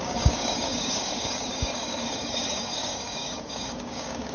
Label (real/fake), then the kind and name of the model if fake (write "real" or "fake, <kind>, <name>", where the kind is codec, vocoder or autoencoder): fake, codec, DAC